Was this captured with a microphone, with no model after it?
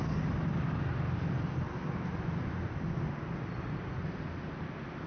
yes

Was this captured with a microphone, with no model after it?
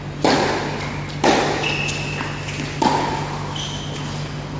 yes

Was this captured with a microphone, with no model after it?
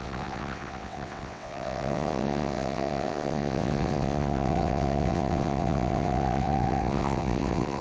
no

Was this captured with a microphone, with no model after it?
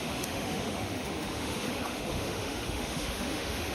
no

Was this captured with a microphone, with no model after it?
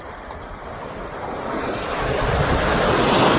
yes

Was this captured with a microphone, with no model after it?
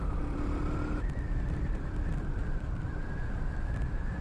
no